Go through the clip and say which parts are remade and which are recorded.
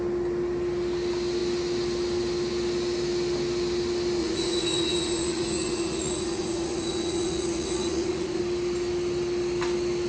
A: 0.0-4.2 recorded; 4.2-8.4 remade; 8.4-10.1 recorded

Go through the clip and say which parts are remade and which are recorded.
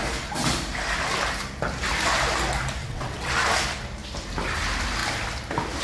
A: 0.0-2.8 recorded; 2.8-3.3 remade; 3.3-5.8 recorded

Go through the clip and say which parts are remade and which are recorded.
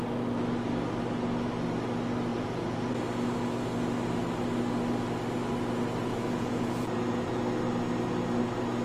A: 0.0-2.3 recorded; 2.3-2.9 remade; 2.9-6.0 recorded; 6.0-7.4 remade; 7.4-8.8 recorded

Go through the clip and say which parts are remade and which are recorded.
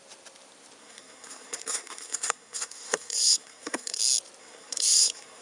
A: 0.0-0.8 recorded; 0.8-4.0 remade; 4.0-4.4 recorded; 4.4-5.4 remade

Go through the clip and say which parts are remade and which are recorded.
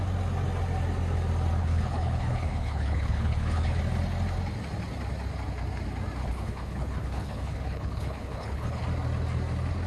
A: 0.0-1.6 recorded; 1.6-3.8 remade; 3.8-6.2 recorded; 6.2-8.8 remade; 8.8-9.9 recorded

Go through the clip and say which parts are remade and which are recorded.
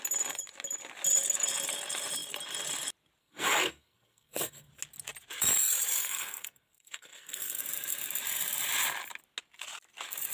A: 0.0-3.2 recorded; 3.2-4.7 remade; 4.7-6.0 recorded; 6.0-7.6 remade; 7.6-10.3 recorded